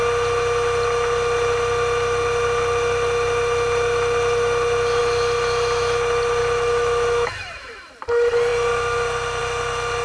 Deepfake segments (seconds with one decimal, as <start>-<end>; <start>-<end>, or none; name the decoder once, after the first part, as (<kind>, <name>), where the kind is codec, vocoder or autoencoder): 6.4-7.9 (autoencoder, DAC-VAE)